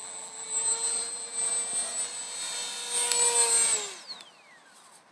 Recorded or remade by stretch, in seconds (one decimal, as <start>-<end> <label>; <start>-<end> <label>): 0.0-1.5 remade; 1.5-5.1 recorded